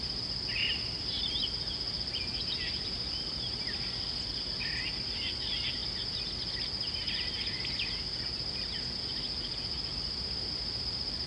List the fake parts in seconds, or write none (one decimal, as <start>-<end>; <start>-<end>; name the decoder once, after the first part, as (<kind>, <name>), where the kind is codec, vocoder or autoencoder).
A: none